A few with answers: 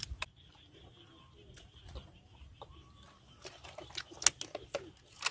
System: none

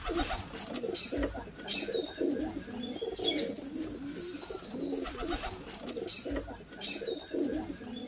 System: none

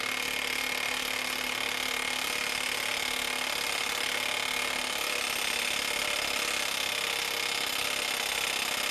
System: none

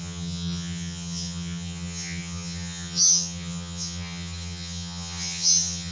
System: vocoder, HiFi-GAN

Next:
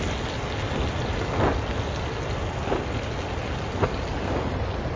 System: none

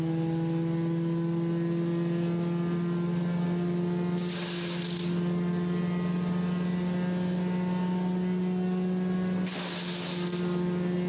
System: none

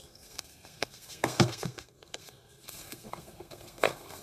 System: codec, SNAC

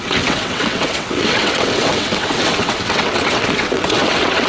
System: vocoder, WaveNeXt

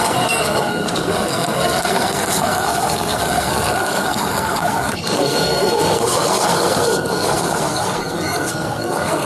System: codec, SNAC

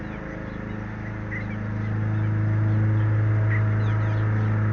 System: none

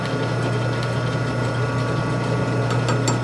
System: none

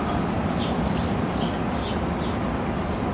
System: none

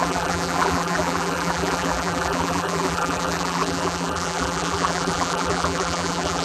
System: vocoder, BigVGAN v2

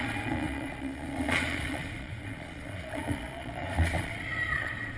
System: vocoder, Vocos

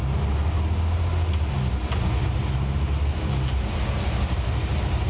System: none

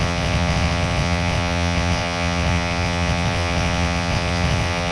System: vocoder, WaveNeXt